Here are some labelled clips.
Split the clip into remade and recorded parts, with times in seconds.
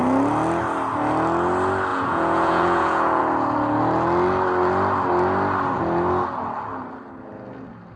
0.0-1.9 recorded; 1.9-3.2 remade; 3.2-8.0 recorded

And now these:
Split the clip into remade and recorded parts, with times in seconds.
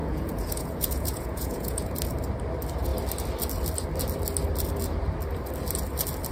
0.0-1.9 remade; 1.9-6.3 recorded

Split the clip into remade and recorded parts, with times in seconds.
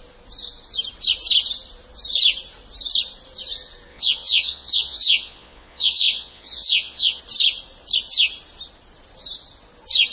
0.0-3.9 recorded; 3.9-7.2 remade; 7.2-10.1 recorded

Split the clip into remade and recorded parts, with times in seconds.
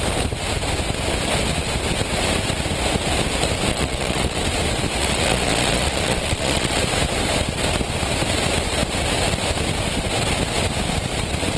0.0-3.7 recorded; 3.7-4.4 remade; 4.4-5.0 recorded; 5.0-6.8 remade; 6.8-11.6 recorded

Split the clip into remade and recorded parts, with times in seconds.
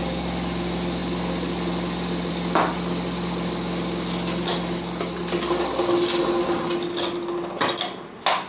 0.0-8.5 recorded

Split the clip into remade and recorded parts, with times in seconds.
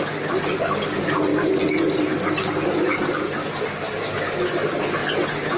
0.0-5.6 recorded